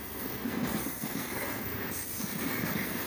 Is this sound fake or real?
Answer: fake